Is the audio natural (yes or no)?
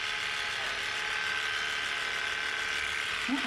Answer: yes